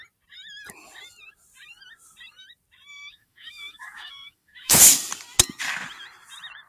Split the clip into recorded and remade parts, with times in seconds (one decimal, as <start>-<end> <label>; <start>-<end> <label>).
0.0-2.9 recorded; 2.9-4.8 remade; 4.8-6.7 recorded